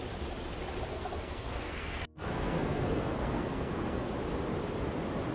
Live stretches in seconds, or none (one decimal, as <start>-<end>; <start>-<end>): 0.0-0.9; 4.1-5.3